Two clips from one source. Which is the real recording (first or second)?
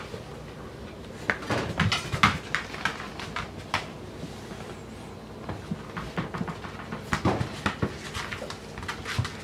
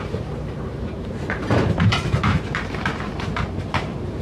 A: first